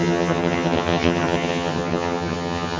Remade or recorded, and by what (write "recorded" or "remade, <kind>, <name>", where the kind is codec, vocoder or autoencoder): remade, vocoder, HiFi-GAN